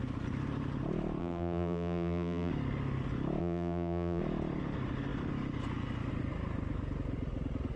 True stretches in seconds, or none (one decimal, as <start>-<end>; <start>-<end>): 0.0-1.2; 2.5-3.4; 4.2-7.8